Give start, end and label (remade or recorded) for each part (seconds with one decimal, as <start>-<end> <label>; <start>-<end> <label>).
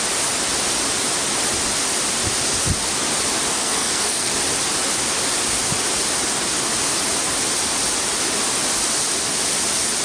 0.0-3.5 recorded; 3.5-4.3 remade; 4.3-10.0 recorded